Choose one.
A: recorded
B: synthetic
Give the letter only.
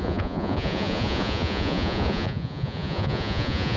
B